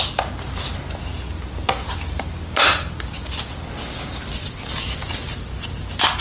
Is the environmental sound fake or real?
real